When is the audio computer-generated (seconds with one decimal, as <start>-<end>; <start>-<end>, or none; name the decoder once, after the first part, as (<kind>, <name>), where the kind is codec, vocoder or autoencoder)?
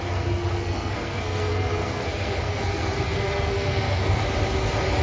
0.0-4.2 (codec, SNAC)